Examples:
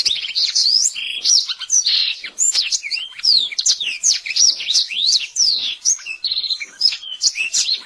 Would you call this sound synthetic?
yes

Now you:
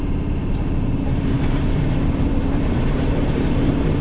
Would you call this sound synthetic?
yes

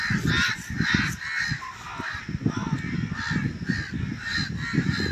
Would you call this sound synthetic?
no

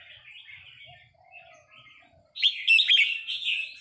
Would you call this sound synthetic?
no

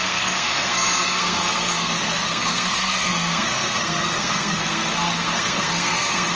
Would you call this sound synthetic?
yes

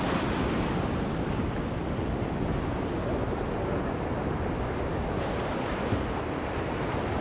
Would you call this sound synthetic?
no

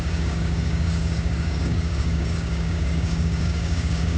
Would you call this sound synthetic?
yes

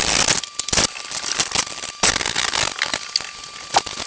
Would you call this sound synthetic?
no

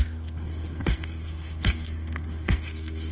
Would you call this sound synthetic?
yes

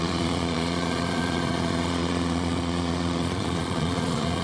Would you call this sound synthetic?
yes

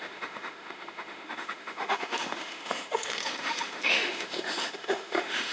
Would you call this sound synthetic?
yes